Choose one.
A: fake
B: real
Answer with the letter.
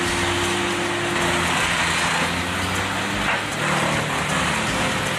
B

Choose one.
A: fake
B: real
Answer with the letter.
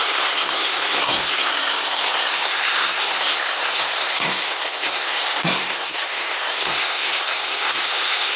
A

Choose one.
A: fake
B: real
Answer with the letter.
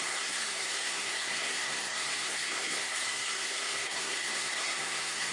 A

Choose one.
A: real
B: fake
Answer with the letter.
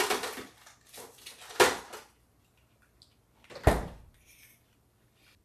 A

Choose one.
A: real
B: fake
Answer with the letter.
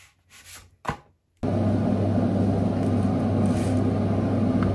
A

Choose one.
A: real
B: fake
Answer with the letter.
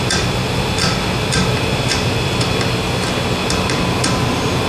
A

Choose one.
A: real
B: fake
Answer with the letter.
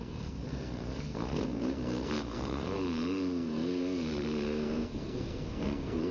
B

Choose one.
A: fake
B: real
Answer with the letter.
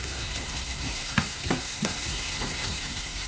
A